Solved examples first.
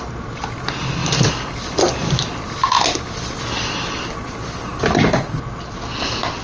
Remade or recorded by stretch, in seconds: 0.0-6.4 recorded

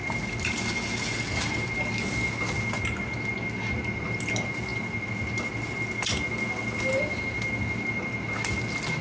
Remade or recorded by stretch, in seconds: 0.0-9.0 recorded

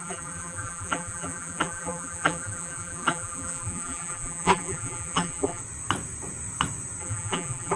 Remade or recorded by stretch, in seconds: 0.0-5.6 remade; 5.6-7.0 recorded; 7.0-7.8 remade

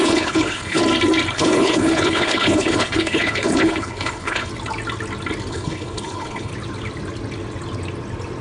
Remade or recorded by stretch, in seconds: 0.0-0.8 remade; 0.8-1.3 recorded; 1.3-4.5 remade; 4.5-5.5 recorded; 5.5-6.5 remade; 6.5-8.4 recorded

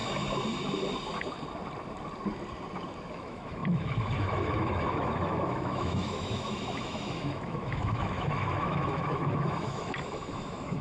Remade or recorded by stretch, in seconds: 0.0-3.1 recorded; 3.1-10.8 remade